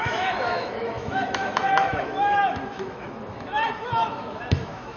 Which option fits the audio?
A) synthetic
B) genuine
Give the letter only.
A